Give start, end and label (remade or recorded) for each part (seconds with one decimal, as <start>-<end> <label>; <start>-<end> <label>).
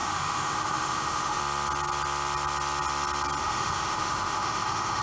0.0-1.4 remade; 1.4-3.4 recorded; 3.4-5.0 remade